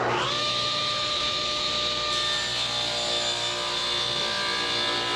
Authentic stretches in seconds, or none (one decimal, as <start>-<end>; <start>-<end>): 0.0-0.4; 1.7-5.2